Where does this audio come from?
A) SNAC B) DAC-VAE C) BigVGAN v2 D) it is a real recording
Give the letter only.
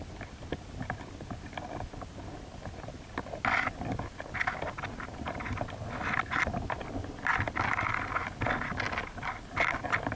D